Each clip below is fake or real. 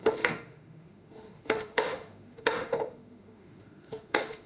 fake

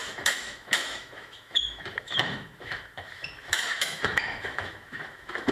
fake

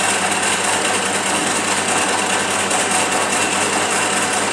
real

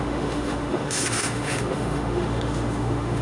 fake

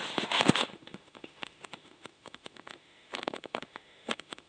fake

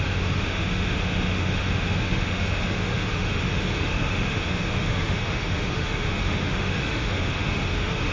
fake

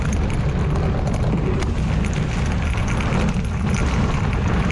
real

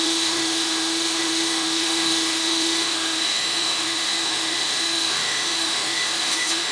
fake